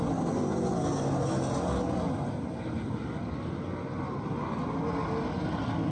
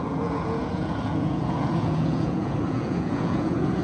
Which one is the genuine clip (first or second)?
first